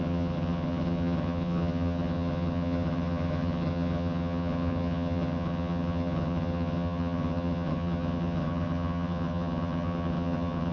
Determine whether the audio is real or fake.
fake